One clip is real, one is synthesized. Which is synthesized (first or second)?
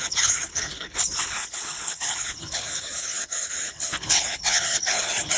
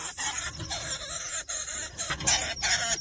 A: first